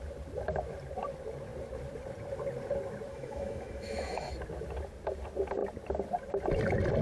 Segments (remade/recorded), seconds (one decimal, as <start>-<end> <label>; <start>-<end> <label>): 0.0-3.1 recorded; 3.1-4.3 remade; 4.3-7.0 recorded

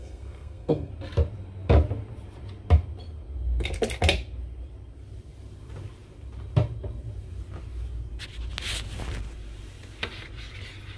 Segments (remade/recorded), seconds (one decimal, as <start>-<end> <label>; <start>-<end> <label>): 0.0-0.9 remade; 0.9-11.0 recorded

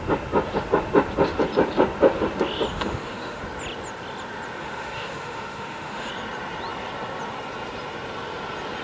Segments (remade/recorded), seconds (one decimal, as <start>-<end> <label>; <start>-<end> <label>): 0.0-2.7 recorded; 2.7-3.4 remade; 3.4-4.6 recorded; 4.6-6.1 remade; 6.1-8.8 recorded